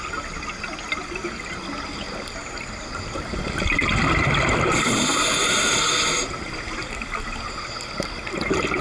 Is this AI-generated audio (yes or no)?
no